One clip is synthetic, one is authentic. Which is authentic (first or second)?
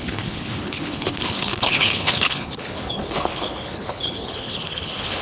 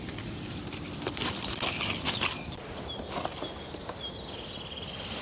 second